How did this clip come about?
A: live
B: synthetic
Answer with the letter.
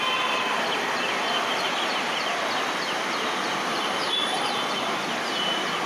A